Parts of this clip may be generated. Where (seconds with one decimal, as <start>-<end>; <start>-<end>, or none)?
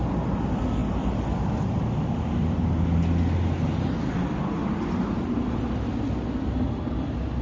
none